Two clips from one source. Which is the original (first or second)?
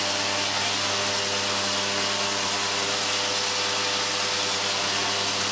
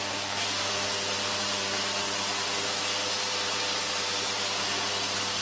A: first